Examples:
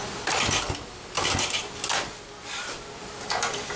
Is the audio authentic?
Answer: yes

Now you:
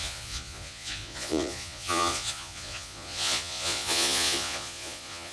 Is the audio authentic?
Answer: no